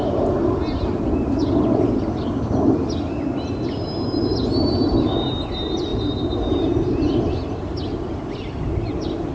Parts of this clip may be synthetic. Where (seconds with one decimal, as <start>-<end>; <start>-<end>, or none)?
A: 5.9-7.2